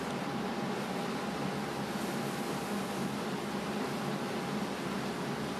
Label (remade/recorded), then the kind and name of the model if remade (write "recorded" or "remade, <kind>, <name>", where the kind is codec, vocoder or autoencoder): recorded